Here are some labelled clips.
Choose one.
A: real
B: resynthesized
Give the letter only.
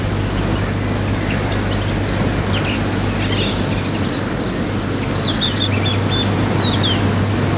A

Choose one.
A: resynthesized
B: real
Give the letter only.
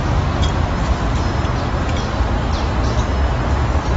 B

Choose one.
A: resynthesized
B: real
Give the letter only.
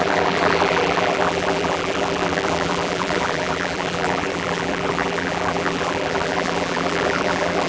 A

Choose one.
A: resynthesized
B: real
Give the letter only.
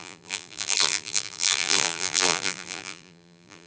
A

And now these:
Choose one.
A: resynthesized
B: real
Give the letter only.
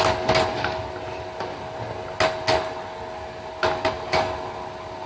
B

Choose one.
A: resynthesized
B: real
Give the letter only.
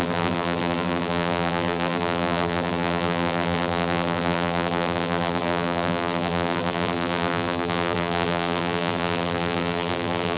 A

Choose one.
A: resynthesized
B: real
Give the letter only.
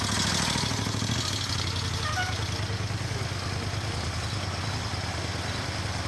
B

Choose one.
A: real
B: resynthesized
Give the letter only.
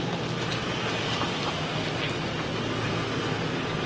A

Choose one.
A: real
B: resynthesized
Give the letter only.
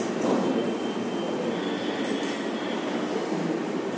A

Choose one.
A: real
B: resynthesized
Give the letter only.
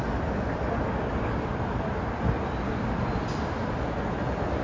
A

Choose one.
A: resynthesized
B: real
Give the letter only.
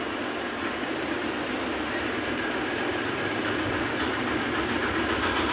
A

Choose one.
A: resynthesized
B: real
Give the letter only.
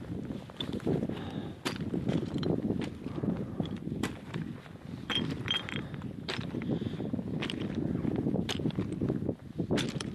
A